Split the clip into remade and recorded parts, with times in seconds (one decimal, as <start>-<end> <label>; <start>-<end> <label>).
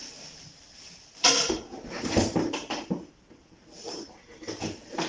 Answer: 0.0-3.1 remade; 3.1-3.8 recorded; 3.8-5.1 remade